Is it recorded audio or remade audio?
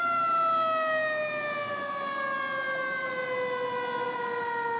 recorded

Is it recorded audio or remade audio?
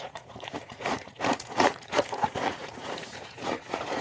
remade